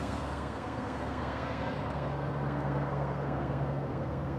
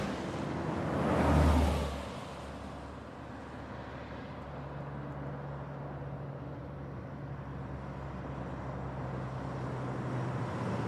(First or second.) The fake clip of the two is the first